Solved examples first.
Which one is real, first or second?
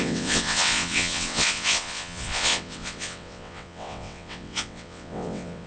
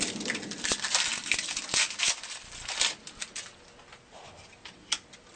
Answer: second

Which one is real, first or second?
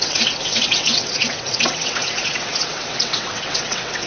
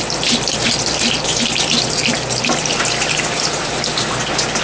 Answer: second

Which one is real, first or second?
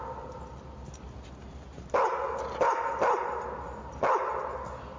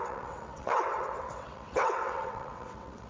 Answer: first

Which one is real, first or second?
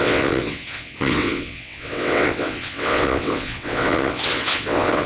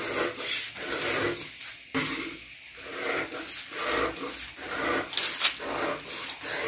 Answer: second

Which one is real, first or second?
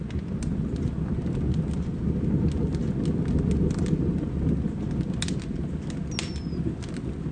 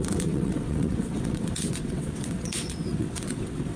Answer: first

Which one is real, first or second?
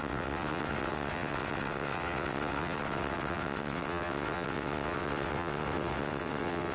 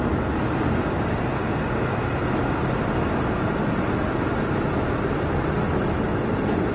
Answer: second